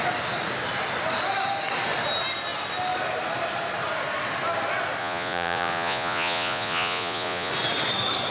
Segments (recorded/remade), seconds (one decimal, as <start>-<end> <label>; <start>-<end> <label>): 0.0-5.0 recorded; 5.0-7.5 remade; 7.5-8.3 recorded